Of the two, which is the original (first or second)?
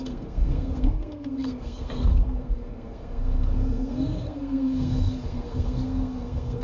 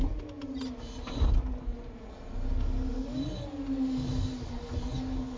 second